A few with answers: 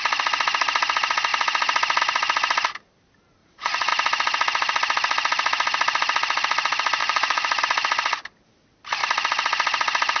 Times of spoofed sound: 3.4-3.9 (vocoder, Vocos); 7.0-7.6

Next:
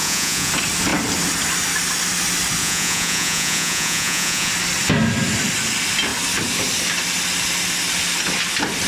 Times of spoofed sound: 0.0-0.5 (vocoder, Vocos); 2.6-4.5

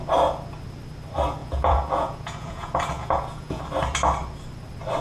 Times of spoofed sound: 1.4-3.6 (vocoder, Vocos)

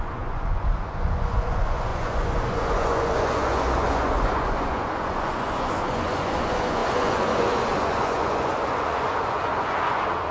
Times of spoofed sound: 0.0-10.3 (vocoder, Vocos)

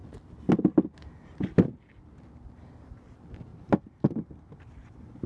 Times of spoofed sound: none

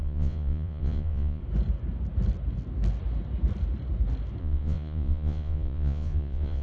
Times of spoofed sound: 0.0-1.4 (vocoder, Vocos); 4.4-6.6

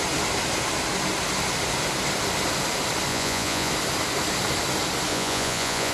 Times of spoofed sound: 3.1-3.7 (vocoder, Vocos); 5.1-5.9

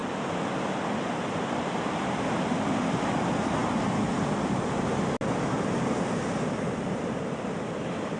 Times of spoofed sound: none